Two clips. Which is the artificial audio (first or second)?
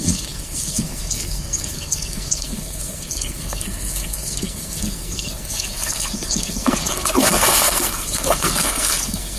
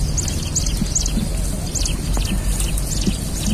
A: first